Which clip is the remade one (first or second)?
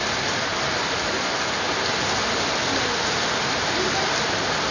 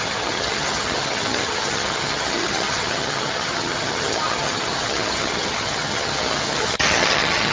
second